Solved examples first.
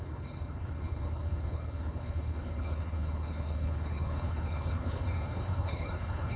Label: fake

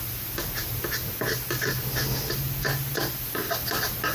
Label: real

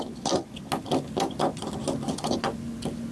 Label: real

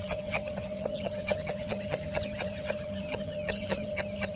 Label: fake